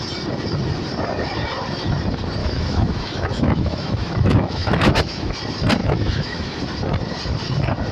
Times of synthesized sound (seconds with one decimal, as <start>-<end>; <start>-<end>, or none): 2.4-5.3; 5.8-6.6